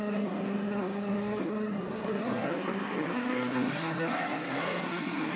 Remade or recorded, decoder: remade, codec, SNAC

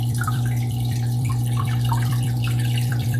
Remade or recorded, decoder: remade, vocoder, BigVGAN v2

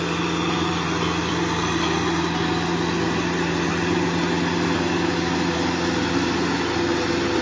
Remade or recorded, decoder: recorded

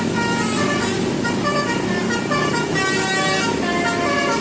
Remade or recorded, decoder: recorded